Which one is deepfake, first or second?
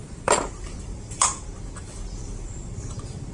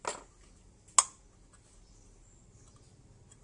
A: first